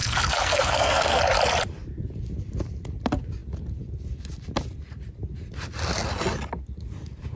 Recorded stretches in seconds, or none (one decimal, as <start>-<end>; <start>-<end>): 1.2-7.4